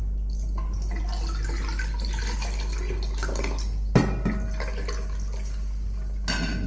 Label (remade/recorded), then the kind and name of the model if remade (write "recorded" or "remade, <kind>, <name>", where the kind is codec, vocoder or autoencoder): recorded